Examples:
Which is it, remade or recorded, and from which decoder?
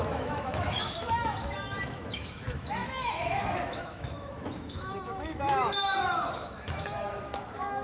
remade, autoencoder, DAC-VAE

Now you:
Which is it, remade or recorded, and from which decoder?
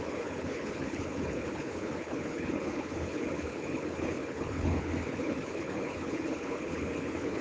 remade, codec, HILCodec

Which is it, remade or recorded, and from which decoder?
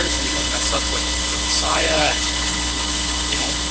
remade, codec, HILCodec